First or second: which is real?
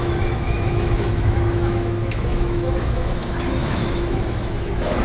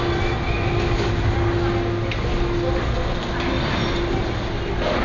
second